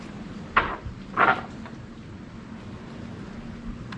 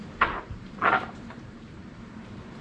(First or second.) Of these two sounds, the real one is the first